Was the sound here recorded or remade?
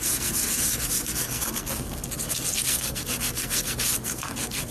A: remade